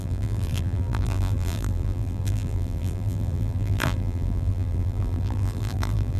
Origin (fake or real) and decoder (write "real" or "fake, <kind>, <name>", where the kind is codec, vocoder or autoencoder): fake, vocoder, BigVGAN v2